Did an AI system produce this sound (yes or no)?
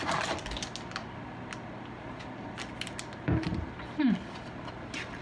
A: no